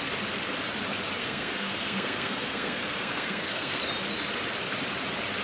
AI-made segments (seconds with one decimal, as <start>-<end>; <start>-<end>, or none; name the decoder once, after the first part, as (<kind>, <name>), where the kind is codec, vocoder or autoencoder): 1.2-3.8 (codec, SNAC)